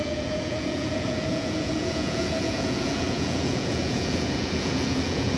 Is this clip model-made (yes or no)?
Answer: yes